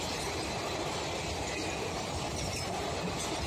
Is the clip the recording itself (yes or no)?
yes